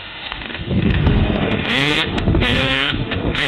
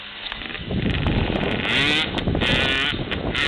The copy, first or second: first